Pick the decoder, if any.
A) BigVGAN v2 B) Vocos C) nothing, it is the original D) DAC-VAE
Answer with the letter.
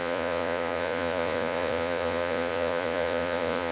B